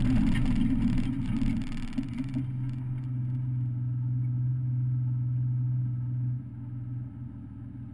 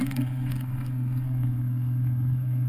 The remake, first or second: second